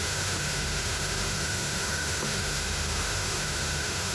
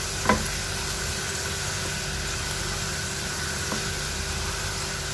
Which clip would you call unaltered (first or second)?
second